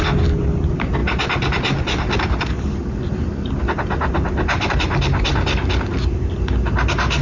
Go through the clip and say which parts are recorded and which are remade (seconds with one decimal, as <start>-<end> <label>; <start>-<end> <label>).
0.0-7.2 recorded